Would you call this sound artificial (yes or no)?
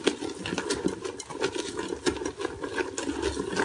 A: no